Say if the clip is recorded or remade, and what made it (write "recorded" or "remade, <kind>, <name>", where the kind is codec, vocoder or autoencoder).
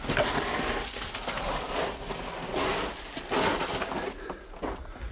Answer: recorded